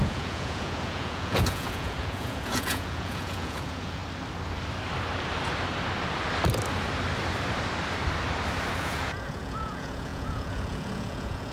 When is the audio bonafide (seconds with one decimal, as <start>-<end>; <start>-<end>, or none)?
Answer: 4.0-8.8